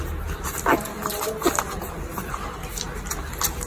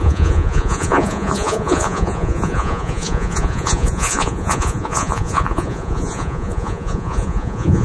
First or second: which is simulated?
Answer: second